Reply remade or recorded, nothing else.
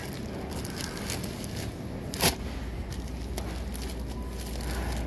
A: recorded